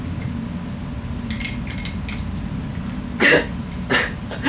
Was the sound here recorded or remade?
recorded